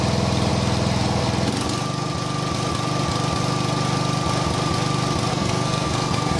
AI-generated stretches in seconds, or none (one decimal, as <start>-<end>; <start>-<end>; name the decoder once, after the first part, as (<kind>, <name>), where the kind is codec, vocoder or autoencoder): 5.3-6.4 (codec, SNAC)